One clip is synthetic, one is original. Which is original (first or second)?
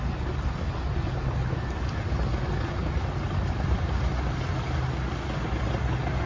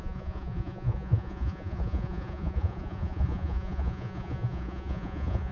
first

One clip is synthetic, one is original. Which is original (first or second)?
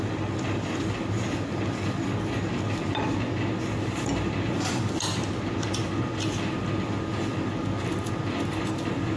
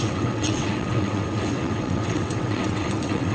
first